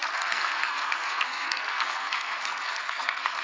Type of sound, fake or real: fake